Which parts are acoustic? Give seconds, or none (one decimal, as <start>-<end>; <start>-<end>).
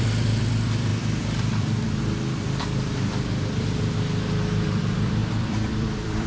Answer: none